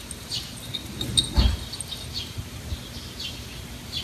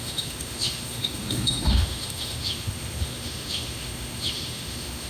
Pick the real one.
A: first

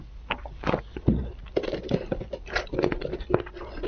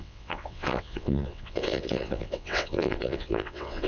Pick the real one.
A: first